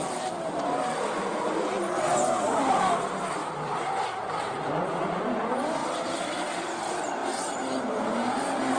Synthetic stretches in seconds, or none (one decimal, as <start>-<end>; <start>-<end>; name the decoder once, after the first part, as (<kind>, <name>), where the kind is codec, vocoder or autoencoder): 0.0-7.2 (vocoder, BigVGAN v2); 8.0-8.8